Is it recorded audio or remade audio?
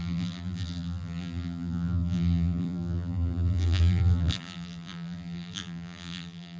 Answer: remade